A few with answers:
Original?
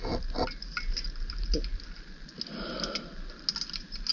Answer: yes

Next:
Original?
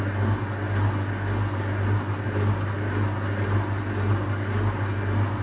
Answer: yes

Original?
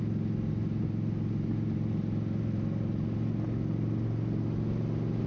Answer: yes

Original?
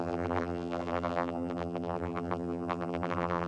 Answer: no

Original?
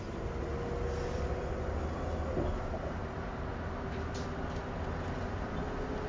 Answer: yes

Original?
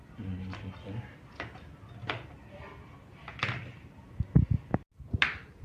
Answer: yes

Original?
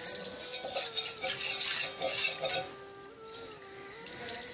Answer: yes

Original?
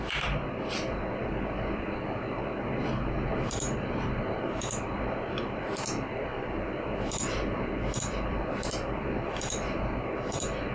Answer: no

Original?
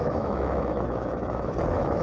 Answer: no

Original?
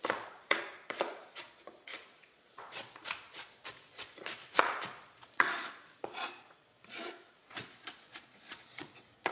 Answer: no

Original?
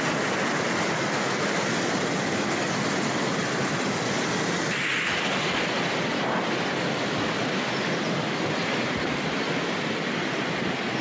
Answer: yes